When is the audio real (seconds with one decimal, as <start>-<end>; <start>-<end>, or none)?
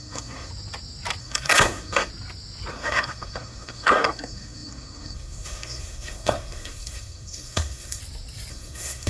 0.5-1.2; 2.1-2.7; 8.0-8.5